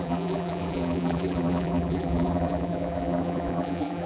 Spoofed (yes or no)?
yes